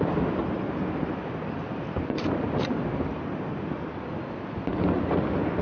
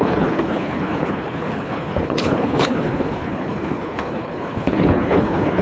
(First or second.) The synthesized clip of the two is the second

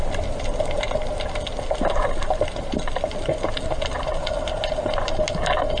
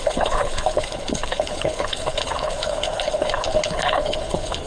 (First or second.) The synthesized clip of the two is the second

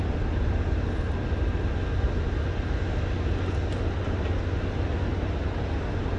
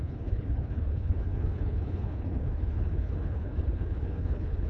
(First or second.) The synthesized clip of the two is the second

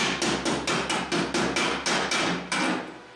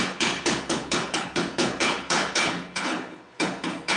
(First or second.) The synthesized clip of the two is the second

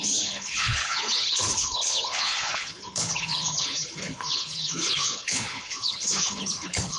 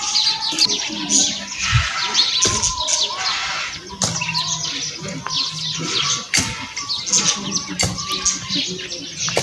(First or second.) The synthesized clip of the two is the first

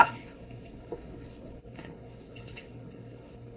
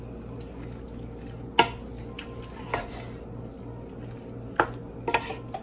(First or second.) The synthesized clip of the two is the first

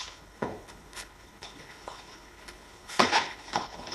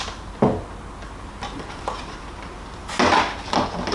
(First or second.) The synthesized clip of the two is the first